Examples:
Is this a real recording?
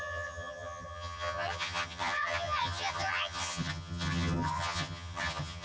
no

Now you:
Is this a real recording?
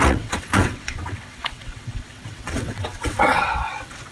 no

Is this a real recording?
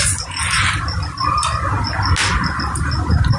yes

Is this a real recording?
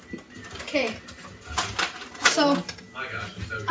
yes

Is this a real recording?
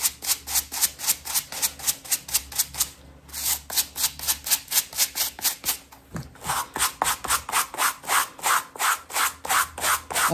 yes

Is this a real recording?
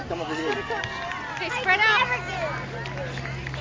yes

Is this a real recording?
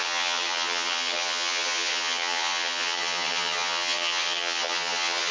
no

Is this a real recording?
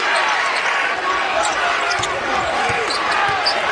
yes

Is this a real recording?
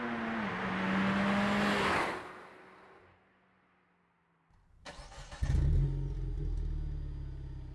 yes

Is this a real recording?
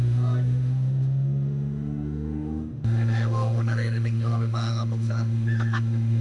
no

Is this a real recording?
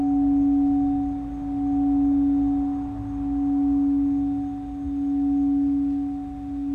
yes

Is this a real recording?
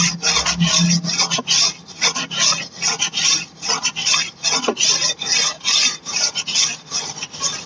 yes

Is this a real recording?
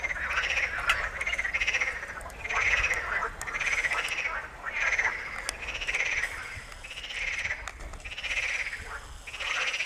yes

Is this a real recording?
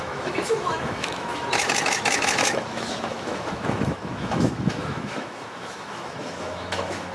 no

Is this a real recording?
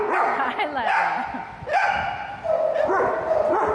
yes